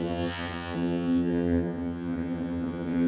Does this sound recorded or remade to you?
remade